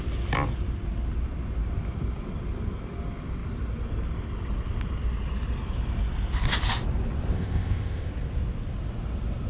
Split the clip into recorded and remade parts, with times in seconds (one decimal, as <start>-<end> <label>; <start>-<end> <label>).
0.0-7.3 recorded; 7.3-8.1 remade; 8.1-9.5 recorded